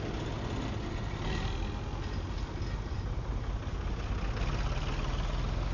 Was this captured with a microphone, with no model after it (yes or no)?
yes